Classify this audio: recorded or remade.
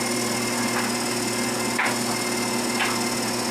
recorded